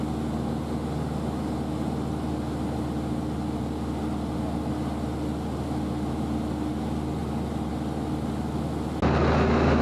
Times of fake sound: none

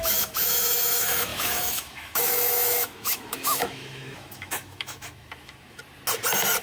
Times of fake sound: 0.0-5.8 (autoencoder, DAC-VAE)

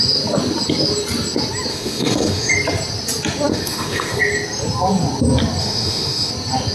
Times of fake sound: 1.7-2.5 (autoencoder, DAC-VAE); 3.5-4.2; 5.6-6.3

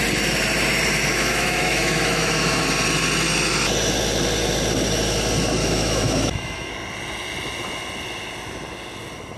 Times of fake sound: 1.1-2.6 (autoencoder, DAC-VAE); 5.6-6.7

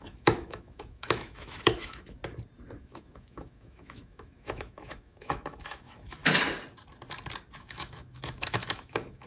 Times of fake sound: 0.0-2.2 (autoencoder, DAC-VAE); 2.8-6.2; 7.6-9.3

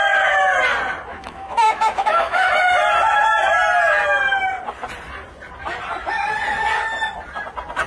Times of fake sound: 1.1-2.5 (autoencoder, DAC-VAE)

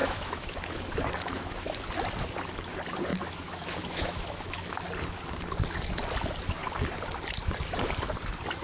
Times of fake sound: 0.0-1.9 (autoencoder, DAC-VAE); 3.1-4.8

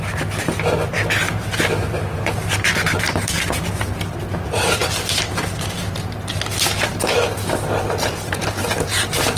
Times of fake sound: none